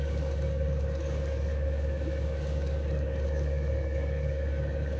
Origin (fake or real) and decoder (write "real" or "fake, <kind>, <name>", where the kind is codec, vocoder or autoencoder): fake, codec, DAC